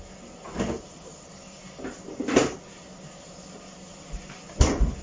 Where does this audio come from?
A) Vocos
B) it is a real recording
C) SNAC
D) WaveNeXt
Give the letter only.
B